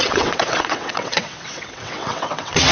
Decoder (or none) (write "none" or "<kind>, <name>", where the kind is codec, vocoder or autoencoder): vocoder, WaveNeXt